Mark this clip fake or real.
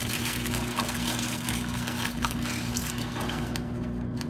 fake